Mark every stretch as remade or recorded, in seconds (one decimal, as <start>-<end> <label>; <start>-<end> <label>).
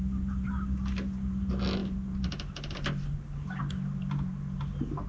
0.0-5.1 recorded